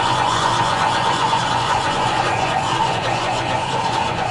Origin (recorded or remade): remade